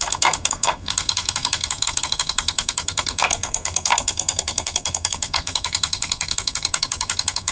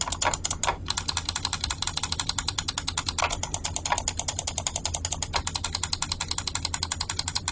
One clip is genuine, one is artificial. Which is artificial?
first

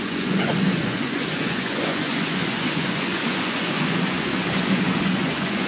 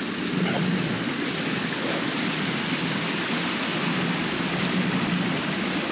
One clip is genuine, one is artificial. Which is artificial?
first